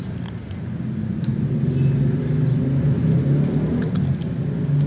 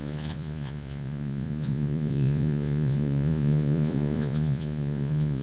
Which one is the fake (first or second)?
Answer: second